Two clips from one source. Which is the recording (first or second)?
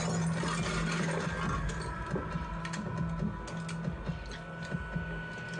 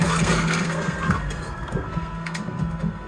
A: first